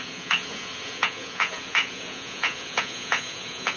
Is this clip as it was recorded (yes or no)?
no